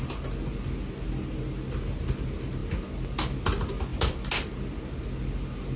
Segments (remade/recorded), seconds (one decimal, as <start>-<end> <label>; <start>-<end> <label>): 0.0-5.8 recorded